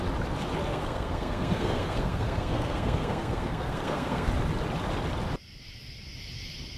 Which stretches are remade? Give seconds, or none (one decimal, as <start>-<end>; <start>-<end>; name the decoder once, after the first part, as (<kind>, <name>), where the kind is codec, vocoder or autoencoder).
0.7-4.3 (codec, SNAC)